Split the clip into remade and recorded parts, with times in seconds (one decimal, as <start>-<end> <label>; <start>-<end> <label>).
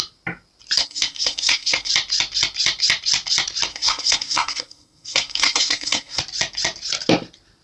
0.0-0.8 recorded; 0.8-1.9 remade; 1.9-3.7 recorded; 3.7-6.2 remade; 6.2-7.6 recorded